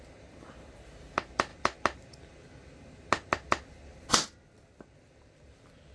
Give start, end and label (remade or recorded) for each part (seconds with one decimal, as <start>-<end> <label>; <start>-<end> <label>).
0.0-5.9 recorded